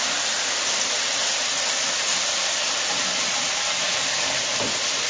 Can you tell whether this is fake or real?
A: fake